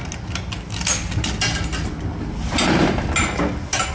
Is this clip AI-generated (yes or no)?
no